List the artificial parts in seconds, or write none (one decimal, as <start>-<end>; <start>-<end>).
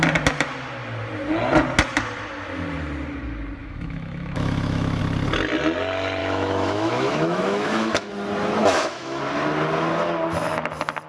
3.6-5.0; 6.2-8.1; 8.6-9.2